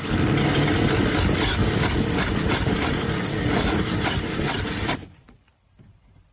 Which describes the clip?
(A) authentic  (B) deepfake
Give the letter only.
A